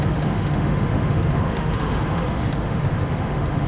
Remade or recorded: remade